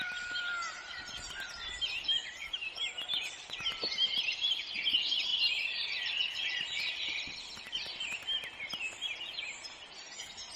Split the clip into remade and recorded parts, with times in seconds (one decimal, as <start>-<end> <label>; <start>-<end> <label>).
0.0-2.2 recorded; 2.2-2.7 remade; 2.7-5.3 recorded; 5.3-8.0 remade; 8.0-10.6 recorded